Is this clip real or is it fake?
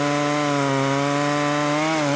real